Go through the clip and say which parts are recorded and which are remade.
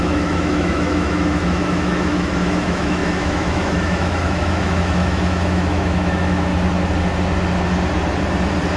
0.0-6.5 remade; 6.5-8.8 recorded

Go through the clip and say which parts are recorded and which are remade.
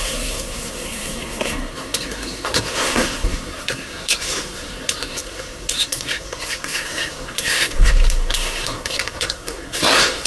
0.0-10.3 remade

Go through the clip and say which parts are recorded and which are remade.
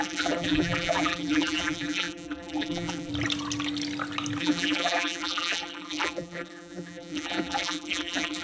0.0-3.1 remade; 3.1-4.4 recorded; 4.4-8.4 remade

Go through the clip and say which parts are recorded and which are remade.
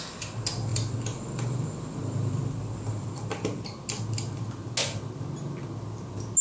0.0-0.7 recorded; 0.7-3.1 remade; 3.1-6.4 recorded